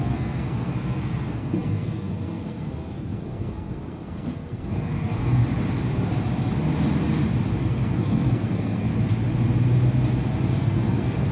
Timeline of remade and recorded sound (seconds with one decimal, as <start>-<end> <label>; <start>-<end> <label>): 0.0-5.4 remade; 5.4-7.6 recorded; 7.6-8.9 remade; 8.9-10.6 recorded; 10.6-11.3 remade